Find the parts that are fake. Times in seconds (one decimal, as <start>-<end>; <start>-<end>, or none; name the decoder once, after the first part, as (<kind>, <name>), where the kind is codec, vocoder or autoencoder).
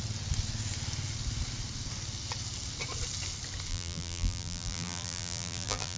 3.7-6.0 (vocoder, BigVGAN v2)